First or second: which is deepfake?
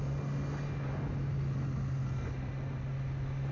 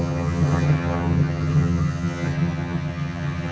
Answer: second